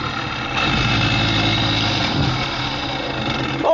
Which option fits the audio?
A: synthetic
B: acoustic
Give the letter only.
B